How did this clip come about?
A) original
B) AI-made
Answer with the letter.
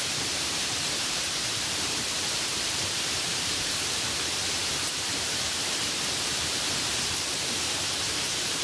B